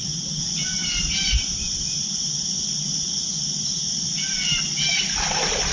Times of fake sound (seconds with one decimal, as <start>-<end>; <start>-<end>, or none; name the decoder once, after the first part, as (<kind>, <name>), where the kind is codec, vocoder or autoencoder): none